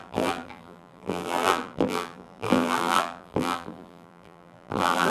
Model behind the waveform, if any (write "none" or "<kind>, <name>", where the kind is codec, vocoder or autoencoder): vocoder, BigVGAN v2